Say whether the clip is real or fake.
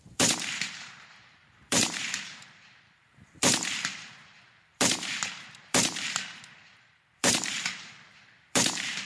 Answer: fake